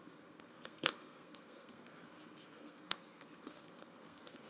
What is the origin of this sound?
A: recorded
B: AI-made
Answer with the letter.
B